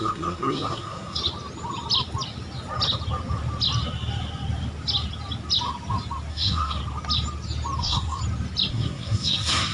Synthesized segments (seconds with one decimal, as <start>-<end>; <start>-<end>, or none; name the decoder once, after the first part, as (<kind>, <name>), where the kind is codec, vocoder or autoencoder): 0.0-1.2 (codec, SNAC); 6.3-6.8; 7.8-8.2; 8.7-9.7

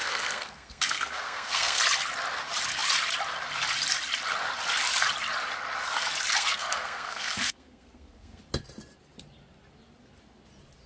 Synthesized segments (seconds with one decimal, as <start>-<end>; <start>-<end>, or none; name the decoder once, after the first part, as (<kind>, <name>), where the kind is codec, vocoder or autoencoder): 0.0-1.8 (codec, SNAC); 6.3-8.4

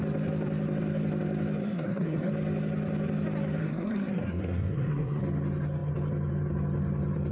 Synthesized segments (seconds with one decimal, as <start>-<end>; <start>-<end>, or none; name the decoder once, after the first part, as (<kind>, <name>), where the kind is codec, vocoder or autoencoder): 1.6-2.3 (codec, SNAC); 3.6-5.2

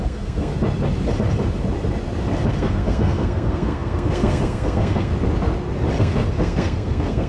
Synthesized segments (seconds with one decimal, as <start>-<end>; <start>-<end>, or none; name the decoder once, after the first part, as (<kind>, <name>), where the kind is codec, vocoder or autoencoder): 0.0-0.5 (codec, SNAC); 2.5-5.1; 6.0-7.3

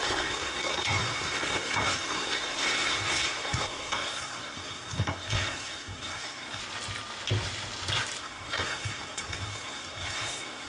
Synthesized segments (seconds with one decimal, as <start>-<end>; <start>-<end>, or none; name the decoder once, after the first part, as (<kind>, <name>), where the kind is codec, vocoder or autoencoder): 0.0-6.6 (codec, SNAC); 8.2-10.7